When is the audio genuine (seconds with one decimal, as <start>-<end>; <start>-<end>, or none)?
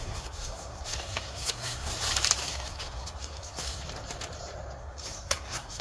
1.9-2.4; 3.8-4.8